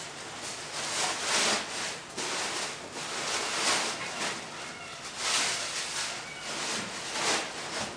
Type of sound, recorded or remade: recorded